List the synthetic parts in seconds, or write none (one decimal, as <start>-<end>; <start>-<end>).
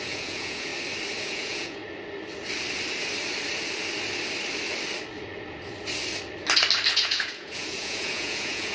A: 0.0-0.7; 1.2-1.8; 6.9-8.7